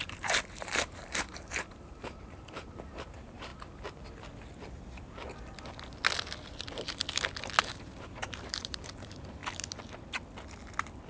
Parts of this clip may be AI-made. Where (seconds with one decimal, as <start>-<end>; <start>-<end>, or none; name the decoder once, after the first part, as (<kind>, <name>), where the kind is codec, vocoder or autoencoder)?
0.0-3.5 (vocoder, BigVGAN v2); 7.6-9.4